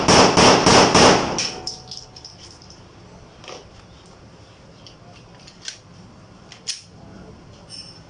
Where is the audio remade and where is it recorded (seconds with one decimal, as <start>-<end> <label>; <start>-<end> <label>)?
0.0-8.1 recorded